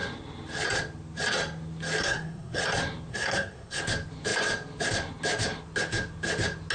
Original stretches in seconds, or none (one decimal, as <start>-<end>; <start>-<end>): 0.0-2.0; 2.6-3.1; 3.8-6.7